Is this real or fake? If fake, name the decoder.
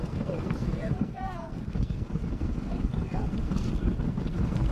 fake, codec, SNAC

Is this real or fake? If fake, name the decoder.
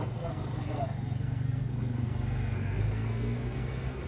fake, codec, SNAC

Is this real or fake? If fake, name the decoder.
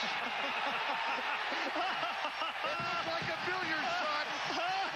real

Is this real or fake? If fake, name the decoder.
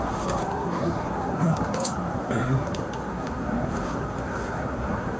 fake, codec, SNAC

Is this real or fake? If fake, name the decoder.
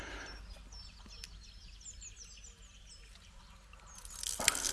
real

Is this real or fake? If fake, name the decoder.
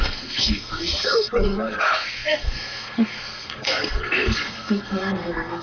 fake, codec, SNAC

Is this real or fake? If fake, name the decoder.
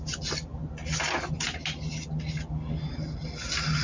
real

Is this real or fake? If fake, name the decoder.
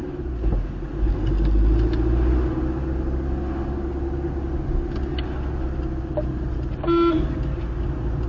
real